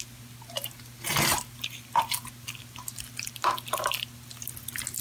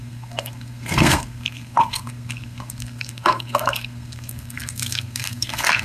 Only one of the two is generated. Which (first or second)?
second